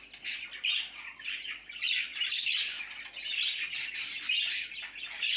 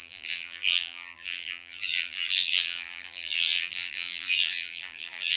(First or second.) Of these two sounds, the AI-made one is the second